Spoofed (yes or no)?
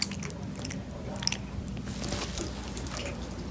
no